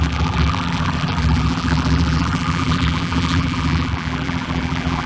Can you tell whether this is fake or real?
fake